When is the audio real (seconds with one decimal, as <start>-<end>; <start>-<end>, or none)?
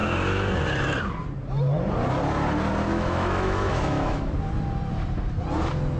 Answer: 0.0-2.9; 4.3-6.0